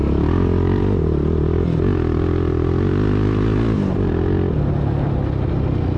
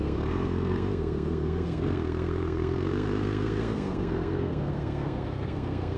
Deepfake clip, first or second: second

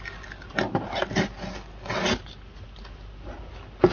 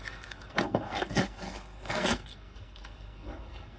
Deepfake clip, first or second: second